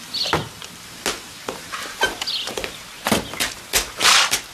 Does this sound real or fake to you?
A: real